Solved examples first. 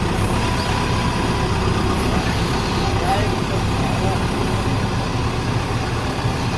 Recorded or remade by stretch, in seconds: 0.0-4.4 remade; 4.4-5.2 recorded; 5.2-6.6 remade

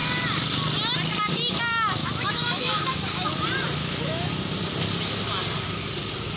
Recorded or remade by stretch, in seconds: 0.0-2.0 recorded; 2.0-3.3 remade; 3.3-3.8 recorded; 3.8-4.3 remade; 4.3-6.4 recorded

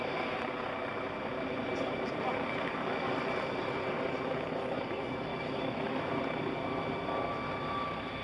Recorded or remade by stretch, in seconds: 0.0-5.3 recorded; 5.3-6.1 remade; 6.1-8.2 recorded

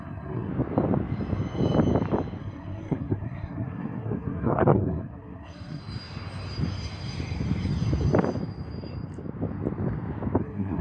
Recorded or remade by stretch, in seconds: 0.0-0.5 remade; 0.5-2.4 recorded; 2.4-5.8 remade; 5.8-10.4 recorded; 10.4-10.8 remade

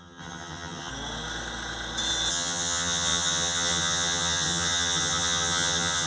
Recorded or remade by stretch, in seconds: 0.0-0.9 remade; 0.9-2.3 recorded; 2.3-6.1 remade

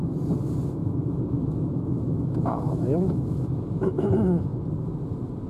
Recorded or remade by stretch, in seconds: 0.0-0.8 recorded; 0.8-4.1 remade; 4.1-5.5 recorded

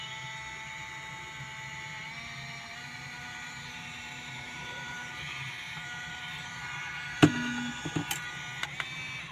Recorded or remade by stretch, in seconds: 0.0-2.7 recorded; 2.7-7.2 remade; 7.2-9.3 recorded

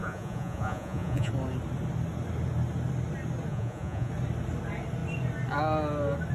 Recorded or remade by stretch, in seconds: 0.0-1.3 remade; 1.3-3.5 recorded; 3.5-4.1 remade; 4.1-6.3 recorded